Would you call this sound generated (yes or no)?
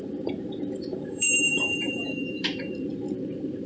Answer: yes